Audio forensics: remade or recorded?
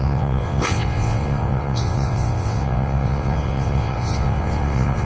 remade